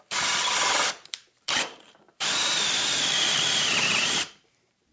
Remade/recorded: remade